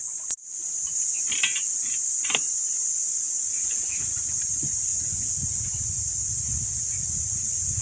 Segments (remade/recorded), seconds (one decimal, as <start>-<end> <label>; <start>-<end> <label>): 0.0-3.5 recorded; 3.5-4.0 remade; 4.0-4.9 recorded; 4.9-5.6 remade; 5.6-7.8 recorded